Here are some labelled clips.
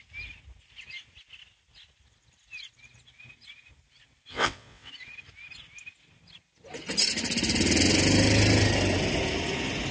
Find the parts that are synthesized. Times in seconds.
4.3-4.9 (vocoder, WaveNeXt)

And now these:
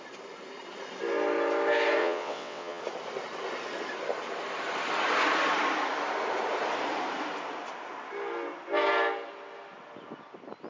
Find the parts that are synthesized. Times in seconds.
2.0-2.8 (vocoder, WaveNeXt)

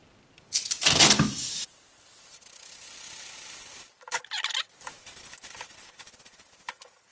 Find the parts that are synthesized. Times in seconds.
none

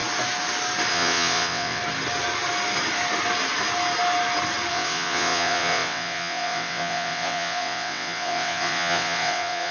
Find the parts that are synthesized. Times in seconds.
0.9-1.8 (vocoder, WaveNeXt); 4.7-9.7